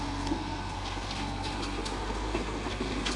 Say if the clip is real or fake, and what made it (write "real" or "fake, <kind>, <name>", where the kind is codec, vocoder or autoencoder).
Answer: fake, codec, SNAC